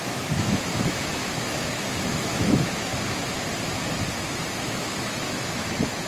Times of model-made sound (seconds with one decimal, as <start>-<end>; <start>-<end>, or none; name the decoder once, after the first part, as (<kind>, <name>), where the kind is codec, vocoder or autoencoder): 0.0-2.9 (autoencoder, DAC-VAE); 4.5-6.1

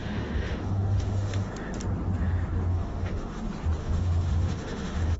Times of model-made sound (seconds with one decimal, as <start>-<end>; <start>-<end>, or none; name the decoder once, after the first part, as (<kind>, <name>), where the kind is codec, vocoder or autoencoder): 0.0-1.5 (autoencoder, DAC-VAE); 2.7-3.4; 3.8-5.2

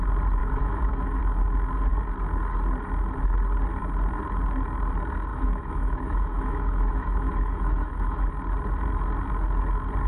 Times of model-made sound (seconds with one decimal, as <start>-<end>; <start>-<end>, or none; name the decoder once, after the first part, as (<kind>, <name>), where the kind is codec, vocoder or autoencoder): 0.4-1.2 (autoencoder, DAC-VAE); 5.3-8.3

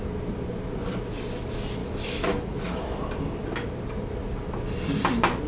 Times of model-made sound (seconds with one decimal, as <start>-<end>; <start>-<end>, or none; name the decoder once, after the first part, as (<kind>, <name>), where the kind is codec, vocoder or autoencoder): 1.8-3.0 (autoencoder, DAC-VAE)

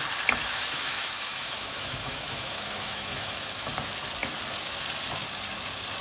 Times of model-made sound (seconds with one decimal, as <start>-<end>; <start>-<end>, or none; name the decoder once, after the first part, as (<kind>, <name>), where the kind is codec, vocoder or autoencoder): 0.4-3.7 (autoencoder, DAC-VAE)

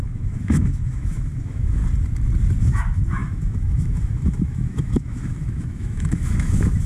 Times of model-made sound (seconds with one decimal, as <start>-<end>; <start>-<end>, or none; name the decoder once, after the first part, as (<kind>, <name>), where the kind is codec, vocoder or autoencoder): 0.0-1.8 (autoencoder, DAC-VAE); 2.6-6.9

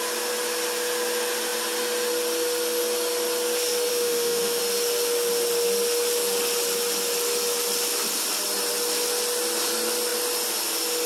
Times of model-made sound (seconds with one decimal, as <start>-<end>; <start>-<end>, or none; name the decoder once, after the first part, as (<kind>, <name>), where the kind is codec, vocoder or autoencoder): 3.9-4.6 (autoencoder, DAC-VAE)

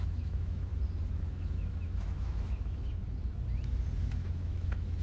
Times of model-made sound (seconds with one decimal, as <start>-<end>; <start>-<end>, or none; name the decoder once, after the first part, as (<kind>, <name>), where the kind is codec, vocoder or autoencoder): 0.0-0.7 (autoencoder, DAC-VAE); 1.3-3.0; 4.0-5.0